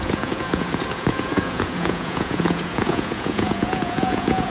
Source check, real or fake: fake